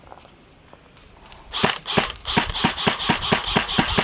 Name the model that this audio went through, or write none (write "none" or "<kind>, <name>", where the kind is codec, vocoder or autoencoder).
none